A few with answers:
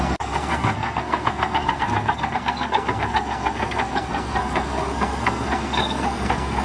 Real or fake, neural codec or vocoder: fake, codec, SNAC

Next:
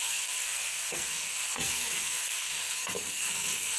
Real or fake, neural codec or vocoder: fake, codec, SNAC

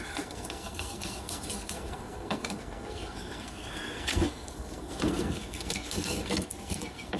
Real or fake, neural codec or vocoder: fake, codec, SNAC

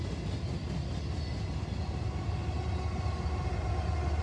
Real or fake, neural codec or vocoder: real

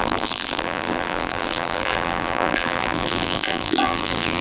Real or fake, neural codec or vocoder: fake, vocoder, BigVGAN v2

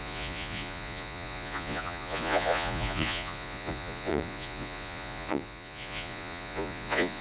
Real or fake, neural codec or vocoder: fake, vocoder, Vocos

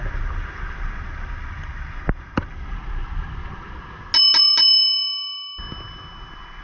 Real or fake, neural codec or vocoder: real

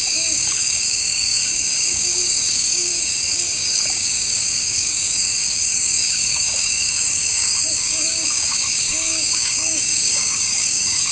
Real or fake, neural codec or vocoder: fake, codec, DAC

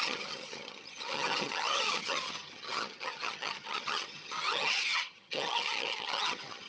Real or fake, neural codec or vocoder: fake, vocoder, HiFi-GAN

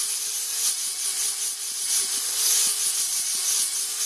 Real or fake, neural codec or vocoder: real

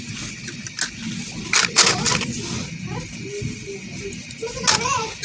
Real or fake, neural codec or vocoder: real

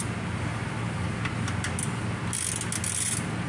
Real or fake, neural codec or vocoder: real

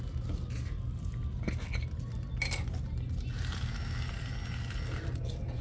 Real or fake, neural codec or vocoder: real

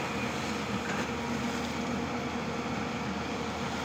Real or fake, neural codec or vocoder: real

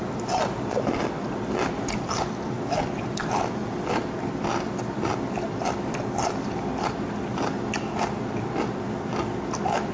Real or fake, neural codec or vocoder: real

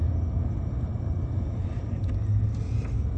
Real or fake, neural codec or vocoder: real